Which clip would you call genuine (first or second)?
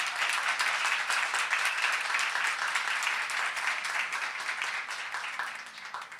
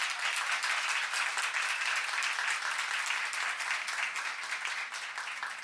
second